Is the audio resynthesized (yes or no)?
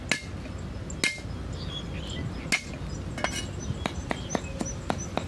no